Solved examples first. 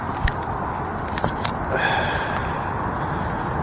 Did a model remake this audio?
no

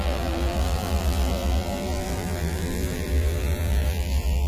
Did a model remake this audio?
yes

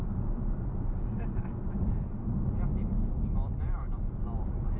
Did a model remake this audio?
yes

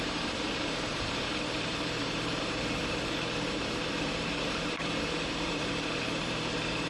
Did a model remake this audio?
yes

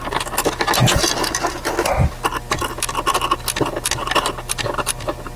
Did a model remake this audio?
no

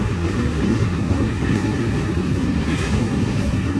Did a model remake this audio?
yes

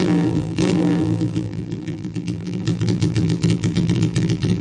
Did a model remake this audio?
yes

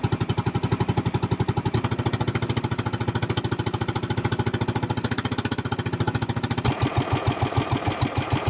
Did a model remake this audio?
no